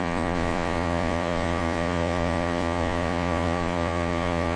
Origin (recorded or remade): remade